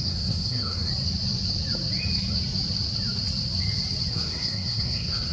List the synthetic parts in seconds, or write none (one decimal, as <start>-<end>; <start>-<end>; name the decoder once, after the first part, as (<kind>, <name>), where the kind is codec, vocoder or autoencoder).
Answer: 0.0-0.9 (codec, SNAC); 4.1-5.3